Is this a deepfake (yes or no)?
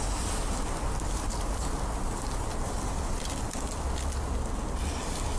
no